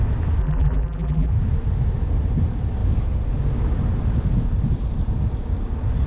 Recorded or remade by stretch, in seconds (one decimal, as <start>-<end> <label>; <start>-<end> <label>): 0.0-0.4 recorded; 0.4-1.3 remade; 1.3-6.1 recorded